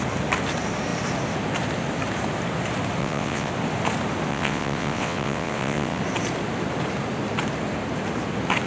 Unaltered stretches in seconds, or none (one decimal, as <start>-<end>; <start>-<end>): 0.0-3.0; 3.5-4.3; 6.0-8.7

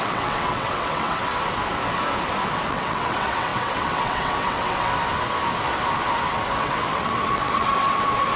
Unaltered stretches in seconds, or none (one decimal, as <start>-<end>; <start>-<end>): 1.3-2.7; 4.9-6.6

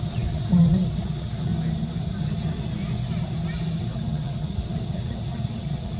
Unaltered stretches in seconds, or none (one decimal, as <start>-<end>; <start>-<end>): 1.5-3.8

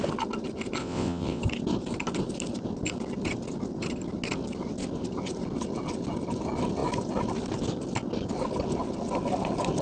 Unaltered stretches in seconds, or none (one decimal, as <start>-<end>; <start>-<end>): 0.0-0.8; 1.4-9.8